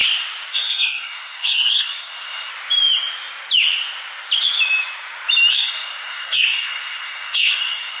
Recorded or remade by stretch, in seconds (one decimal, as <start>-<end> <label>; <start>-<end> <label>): 0.0-0.5 recorded; 0.5-2.5 remade; 2.5-5.5 recorded; 5.5-8.0 remade